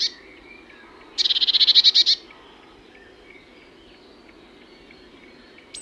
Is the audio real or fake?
real